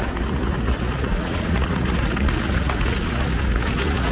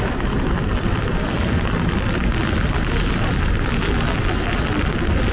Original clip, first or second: second